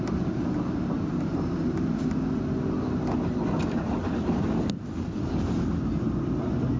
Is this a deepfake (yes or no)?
no